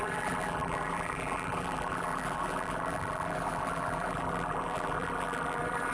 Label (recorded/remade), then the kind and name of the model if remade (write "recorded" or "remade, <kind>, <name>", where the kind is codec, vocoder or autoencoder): remade, vocoder, BigVGAN v2